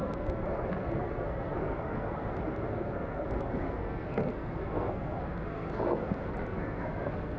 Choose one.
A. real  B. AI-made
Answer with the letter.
B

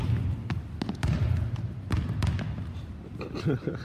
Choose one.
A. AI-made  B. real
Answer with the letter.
B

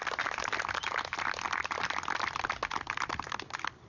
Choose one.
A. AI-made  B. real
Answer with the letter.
B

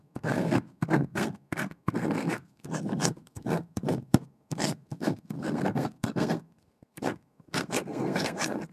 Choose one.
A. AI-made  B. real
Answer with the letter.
A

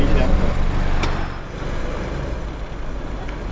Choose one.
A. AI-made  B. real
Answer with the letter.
B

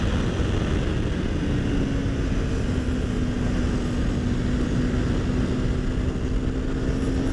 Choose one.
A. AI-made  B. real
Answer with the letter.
B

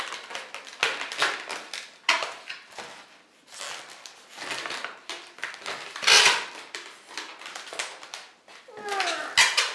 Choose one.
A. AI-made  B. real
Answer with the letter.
B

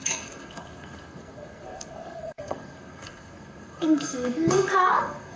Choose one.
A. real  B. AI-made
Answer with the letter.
B